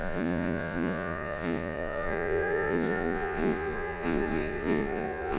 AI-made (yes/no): yes